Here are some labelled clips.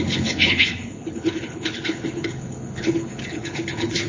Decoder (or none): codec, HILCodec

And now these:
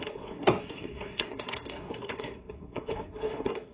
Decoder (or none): codec, SNAC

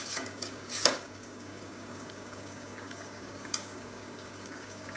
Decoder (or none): codec, DAC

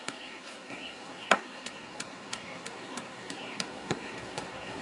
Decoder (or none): codec, SNAC